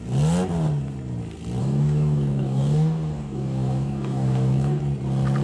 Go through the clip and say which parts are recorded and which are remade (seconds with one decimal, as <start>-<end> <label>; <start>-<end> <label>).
0.0-1.6 recorded; 1.6-4.8 remade; 4.8-5.4 recorded